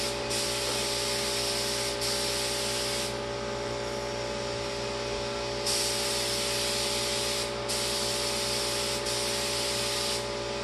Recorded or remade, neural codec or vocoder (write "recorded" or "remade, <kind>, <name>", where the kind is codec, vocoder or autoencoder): recorded